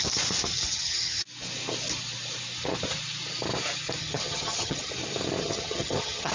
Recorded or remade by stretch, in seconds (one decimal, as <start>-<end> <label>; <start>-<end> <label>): 0.0-0.7 recorded; 0.7-1.2 remade; 1.2-4.0 recorded; 4.0-4.9 remade; 4.9-5.4 recorded; 5.4-6.3 remade